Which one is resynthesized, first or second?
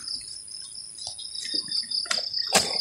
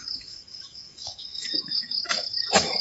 second